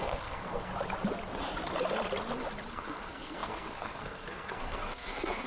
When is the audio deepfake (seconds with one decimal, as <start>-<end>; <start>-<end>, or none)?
0.0-0.7; 2.7-5.5